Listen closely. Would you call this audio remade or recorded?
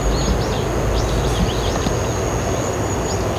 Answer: recorded